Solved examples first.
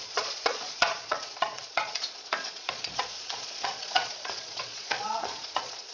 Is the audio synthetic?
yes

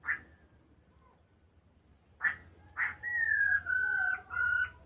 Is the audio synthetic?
no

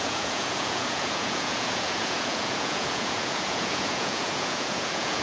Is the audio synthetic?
yes